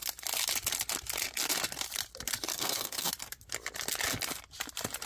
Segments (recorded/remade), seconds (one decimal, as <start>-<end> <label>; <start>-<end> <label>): 0.0-2.5 recorded; 2.5-3.1 remade; 3.1-5.1 recorded